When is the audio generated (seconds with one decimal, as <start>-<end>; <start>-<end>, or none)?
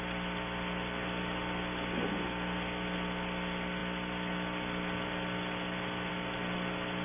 none